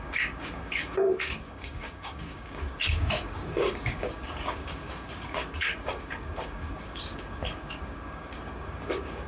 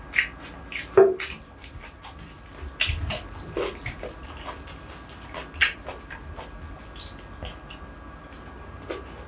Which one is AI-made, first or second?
first